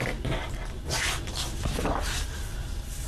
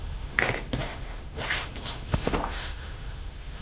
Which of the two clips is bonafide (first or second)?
first